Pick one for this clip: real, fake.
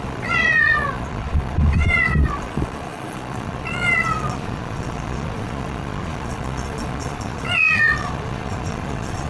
fake